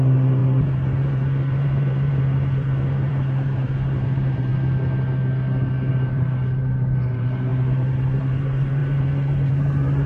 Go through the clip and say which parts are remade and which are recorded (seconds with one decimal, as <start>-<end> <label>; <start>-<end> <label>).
0.0-4.5 remade; 4.5-5.9 recorded; 5.9-10.1 remade